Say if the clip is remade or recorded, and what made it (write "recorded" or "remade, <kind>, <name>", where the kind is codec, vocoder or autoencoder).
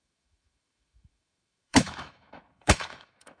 remade, autoencoder, DAC-VAE